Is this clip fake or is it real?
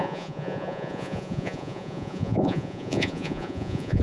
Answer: fake